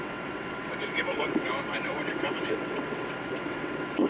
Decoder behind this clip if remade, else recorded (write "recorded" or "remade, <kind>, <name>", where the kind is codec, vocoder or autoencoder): remade, vocoder, WaveNeXt